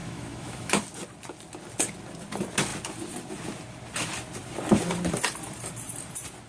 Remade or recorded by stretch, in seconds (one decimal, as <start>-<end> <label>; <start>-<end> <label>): 0.0-0.7 remade; 0.7-6.5 recorded